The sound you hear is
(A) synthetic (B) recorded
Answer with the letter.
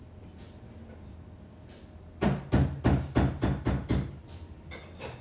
B